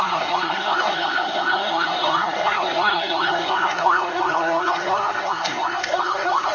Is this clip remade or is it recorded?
remade